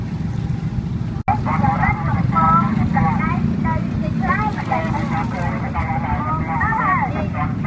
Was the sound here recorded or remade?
recorded